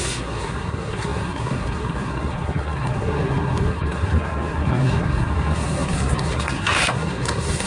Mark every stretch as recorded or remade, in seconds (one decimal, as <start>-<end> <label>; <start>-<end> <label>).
0.0-7.7 remade

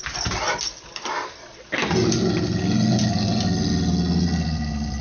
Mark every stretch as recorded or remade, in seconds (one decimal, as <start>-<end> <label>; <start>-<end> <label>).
0.0-5.0 recorded

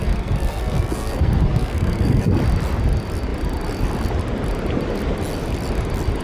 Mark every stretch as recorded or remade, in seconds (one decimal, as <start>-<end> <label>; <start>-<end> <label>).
0.0-2.4 remade; 2.4-6.2 recorded